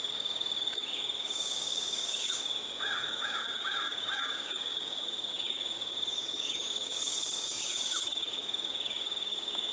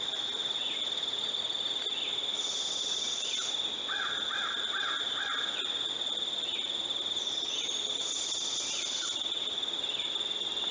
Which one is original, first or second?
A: second